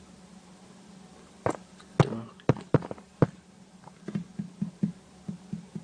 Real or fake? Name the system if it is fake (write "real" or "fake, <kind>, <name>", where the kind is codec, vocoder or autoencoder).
real